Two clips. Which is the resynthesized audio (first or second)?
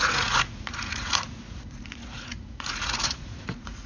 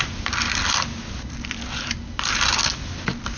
first